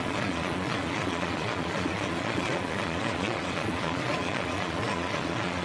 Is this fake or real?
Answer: fake